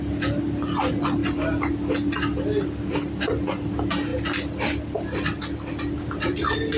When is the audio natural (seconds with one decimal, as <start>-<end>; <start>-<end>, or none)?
0.0-1.2; 2.1-4.1; 6.0-6.8